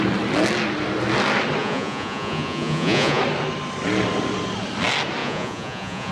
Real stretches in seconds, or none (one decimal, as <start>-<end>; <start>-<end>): 0.0-1.6; 3.2-5.2